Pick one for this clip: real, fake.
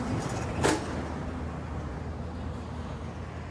real